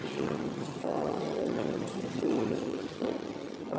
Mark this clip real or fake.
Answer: fake